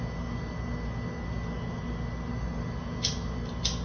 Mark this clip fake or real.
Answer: real